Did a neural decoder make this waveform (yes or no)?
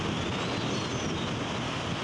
no